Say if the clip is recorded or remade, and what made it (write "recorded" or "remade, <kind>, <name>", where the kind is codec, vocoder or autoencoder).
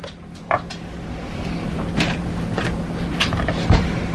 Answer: recorded